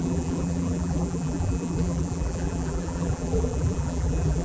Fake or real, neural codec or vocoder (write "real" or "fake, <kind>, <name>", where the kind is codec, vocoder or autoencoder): fake, vocoder, BigVGAN v2